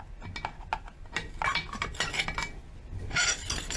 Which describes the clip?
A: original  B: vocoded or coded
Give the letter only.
A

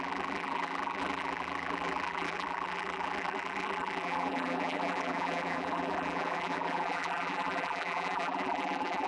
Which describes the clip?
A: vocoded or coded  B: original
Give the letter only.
A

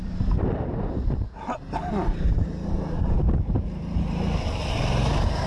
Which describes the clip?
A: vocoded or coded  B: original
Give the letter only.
A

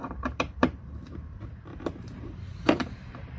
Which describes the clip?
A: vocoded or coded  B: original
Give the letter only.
A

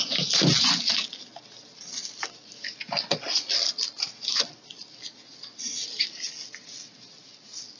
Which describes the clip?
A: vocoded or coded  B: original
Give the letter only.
B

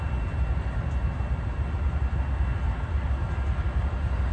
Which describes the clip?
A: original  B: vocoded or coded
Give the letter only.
A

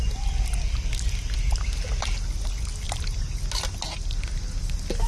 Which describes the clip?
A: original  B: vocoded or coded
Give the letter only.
A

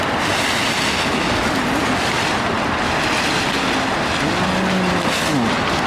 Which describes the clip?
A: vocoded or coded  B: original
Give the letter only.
B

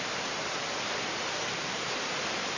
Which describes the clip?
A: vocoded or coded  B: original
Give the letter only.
A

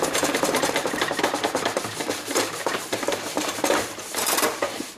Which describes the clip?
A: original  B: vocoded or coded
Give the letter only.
B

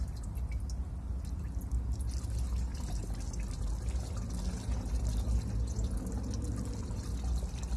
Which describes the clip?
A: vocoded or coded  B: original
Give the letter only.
B